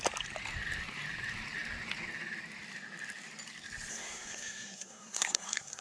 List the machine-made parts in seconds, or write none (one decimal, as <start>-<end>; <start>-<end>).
3.9-5.8